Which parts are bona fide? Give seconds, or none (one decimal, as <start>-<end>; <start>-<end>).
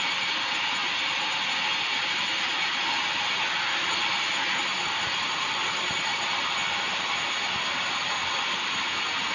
0.0-9.3